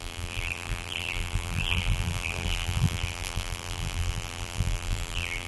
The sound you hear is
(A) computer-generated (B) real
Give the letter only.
A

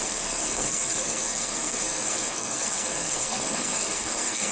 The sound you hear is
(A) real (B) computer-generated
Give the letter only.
B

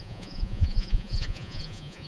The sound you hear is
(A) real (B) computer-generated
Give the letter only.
B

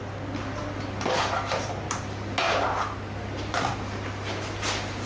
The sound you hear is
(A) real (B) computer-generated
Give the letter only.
A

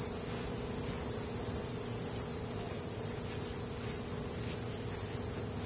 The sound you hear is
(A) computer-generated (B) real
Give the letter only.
B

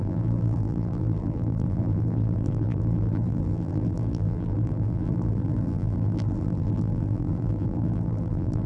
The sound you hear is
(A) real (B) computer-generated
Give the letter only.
B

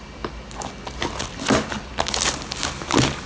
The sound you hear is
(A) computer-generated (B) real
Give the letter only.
B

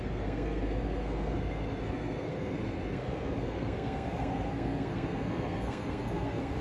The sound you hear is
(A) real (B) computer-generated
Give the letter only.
B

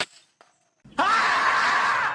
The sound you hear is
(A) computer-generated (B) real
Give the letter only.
B